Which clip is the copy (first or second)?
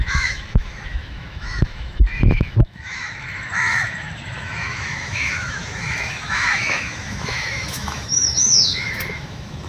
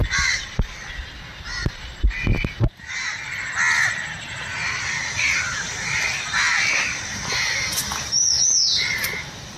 first